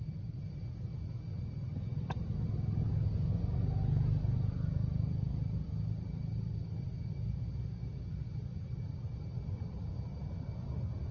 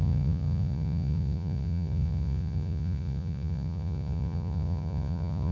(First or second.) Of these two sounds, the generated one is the second